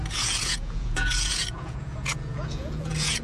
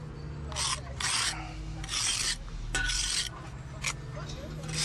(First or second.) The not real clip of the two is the first